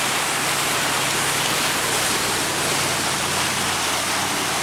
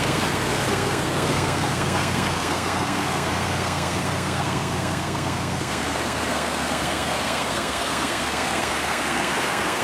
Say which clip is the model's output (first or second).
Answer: second